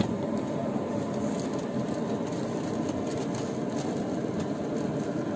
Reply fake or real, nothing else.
real